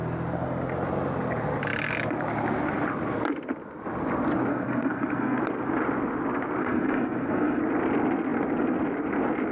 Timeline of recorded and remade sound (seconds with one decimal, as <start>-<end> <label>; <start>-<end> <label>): 0.0-4.5 recorded; 4.5-5.4 remade; 5.4-6.6 recorded; 6.6-7.6 remade; 7.6-9.5 recorded